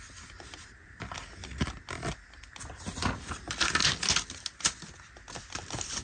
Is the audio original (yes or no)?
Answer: yes